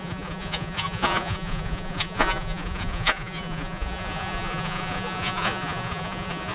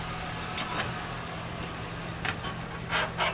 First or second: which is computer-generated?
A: first